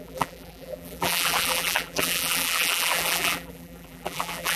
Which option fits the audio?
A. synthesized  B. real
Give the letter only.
A